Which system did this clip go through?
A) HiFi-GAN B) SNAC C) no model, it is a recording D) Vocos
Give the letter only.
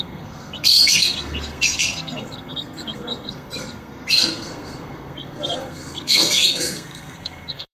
B